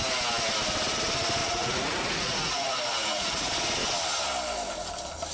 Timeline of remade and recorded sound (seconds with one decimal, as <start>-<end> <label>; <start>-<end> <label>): 0.0-1.4 recorded; 1.4-3.5 remade; 3.5-5.3 recorded